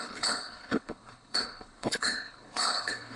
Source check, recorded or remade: remade